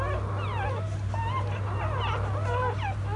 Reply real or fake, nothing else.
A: real